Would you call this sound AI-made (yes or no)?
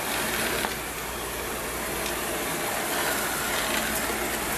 no